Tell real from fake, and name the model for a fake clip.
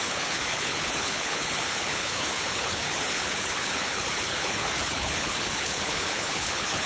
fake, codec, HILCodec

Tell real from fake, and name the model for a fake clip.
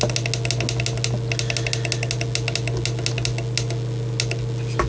real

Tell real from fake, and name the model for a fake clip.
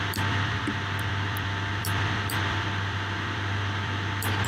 fake, vocoder, BigVGAN v2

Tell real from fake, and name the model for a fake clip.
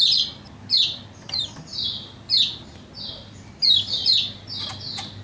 real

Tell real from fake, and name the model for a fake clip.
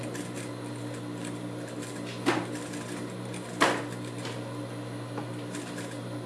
real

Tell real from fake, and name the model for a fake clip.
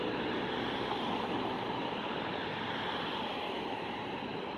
real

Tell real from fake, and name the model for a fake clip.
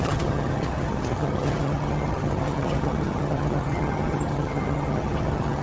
fake, vocoder, HiFi-GAN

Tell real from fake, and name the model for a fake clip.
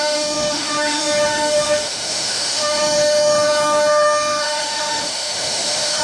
fake, autoencoder, DAC-VAE